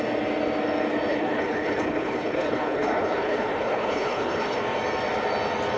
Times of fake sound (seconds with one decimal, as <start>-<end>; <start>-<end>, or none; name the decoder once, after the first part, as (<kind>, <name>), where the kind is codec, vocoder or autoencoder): 1.1-4.6 (codec, HILCodec)